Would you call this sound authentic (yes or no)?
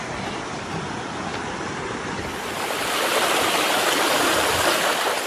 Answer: yes